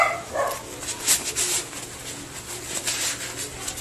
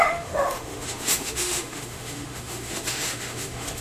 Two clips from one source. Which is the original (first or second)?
first